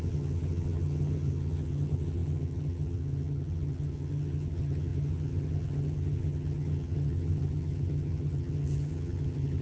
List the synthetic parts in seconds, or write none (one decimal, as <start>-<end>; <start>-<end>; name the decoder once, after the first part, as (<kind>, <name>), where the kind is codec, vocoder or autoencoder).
0.0-9.6 (vocoder, HiFi-GAN)